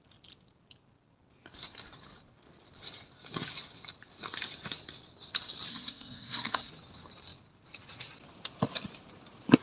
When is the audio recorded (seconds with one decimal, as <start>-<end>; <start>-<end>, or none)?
0.0-5.7; 6.7-9.6